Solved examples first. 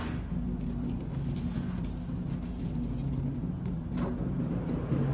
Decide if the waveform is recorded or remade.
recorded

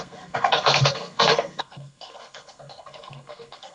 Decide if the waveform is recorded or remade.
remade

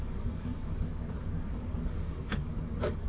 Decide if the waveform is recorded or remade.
remade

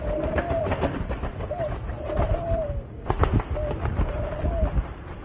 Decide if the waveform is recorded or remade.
remade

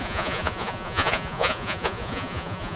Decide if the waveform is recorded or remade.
remade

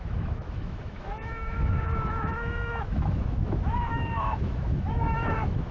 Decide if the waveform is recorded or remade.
remade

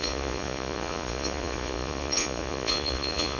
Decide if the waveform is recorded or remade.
remade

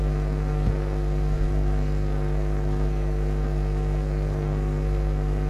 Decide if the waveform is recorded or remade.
remade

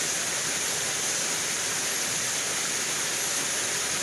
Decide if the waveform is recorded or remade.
recorded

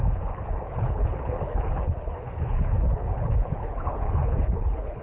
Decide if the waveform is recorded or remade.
remade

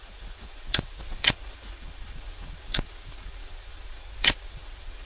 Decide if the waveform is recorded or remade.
remade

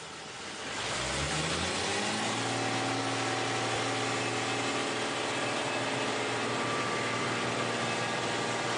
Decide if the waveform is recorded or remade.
recorded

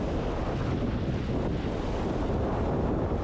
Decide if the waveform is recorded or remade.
recorded